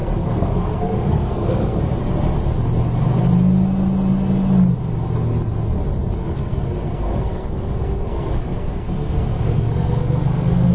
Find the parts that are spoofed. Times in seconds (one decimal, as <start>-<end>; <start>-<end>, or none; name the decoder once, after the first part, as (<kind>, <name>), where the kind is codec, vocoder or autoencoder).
0.0-1.8 (codec, SNAC); 6.2-10.7